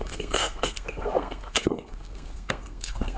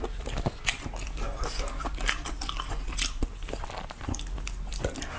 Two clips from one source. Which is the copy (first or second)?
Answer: first